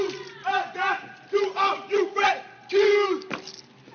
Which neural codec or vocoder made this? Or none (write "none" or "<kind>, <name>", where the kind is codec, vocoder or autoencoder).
none